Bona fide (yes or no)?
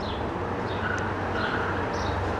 yes